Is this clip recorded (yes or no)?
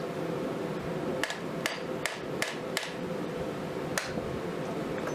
yes